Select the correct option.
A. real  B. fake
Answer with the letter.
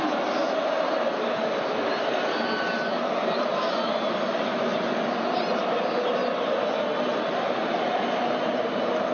A